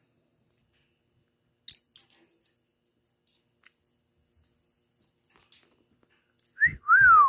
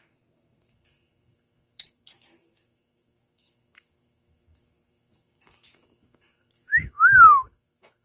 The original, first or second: first